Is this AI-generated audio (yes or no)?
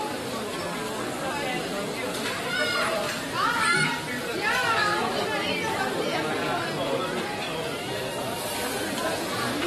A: no